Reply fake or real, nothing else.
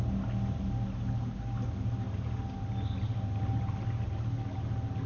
real